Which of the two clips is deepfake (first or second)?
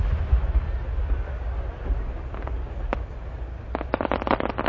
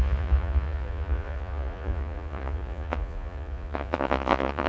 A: second